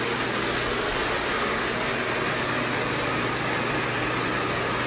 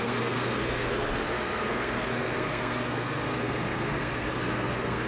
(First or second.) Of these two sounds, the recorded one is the first